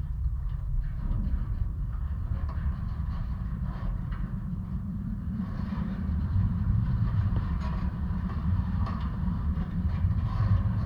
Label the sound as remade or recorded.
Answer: remade